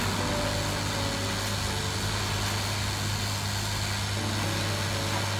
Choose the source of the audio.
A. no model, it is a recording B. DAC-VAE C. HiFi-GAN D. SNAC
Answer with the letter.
A